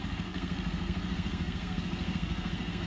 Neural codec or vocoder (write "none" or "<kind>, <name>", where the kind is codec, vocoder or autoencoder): codec, SNAC